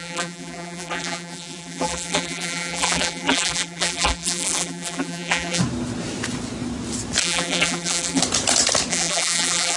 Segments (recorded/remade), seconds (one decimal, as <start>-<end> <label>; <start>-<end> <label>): 0.0-5.6 remade; 5.6-7.2 recorded; 7.2-8.2 remade; 8.2-8.9 recorded; 8.9-9.8 remade